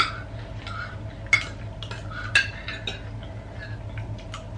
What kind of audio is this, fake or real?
real